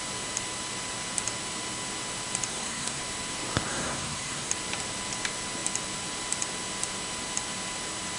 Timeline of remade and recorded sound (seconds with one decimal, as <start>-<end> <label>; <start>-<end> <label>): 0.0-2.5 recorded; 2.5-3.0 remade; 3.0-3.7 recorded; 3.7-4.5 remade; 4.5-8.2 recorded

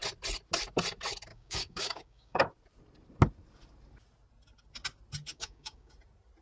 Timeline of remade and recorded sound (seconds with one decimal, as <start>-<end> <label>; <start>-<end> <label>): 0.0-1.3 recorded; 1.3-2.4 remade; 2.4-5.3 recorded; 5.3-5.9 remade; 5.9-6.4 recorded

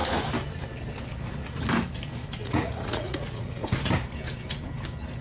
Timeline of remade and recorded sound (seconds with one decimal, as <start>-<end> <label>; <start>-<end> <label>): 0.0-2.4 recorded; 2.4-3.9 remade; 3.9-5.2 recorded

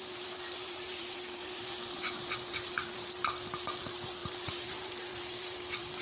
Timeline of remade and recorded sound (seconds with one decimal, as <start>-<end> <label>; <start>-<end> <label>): 0.0-3.2 remade; 3.2-3.8 recorded; 3.8-6.0 remade

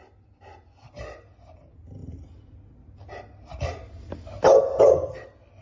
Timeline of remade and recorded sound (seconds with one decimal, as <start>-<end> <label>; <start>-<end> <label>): 0.0-5.6 recorded

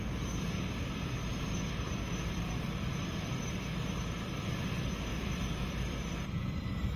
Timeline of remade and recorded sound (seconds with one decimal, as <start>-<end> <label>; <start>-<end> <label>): 0.0-1.3 recorded; 1.3-4.6 remade; 4.6-5.1 recorded; 5.1-6.6 remade; 6.6-7.0 recorded

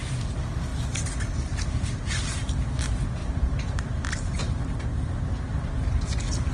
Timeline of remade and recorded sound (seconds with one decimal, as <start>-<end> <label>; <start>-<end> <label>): 0.0-3.2 recorded; 3.2-5.2 remade; 5.2-6.5 recorded

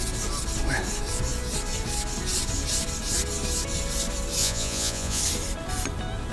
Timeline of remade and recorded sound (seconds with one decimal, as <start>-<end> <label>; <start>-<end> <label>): 0.0-4.4 recorded; 4.4-5.2 remade; 5.2-6.3 recorded